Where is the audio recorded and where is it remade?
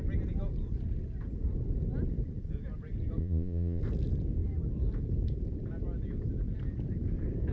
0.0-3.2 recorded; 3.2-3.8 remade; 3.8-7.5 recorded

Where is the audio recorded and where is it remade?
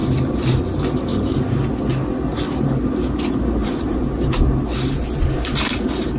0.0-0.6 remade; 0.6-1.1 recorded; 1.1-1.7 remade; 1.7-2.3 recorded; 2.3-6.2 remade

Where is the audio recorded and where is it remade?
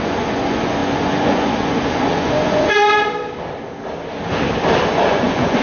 0.0-2.8 remade; 2.8-4.9 recorded; 4.9-5.6 remade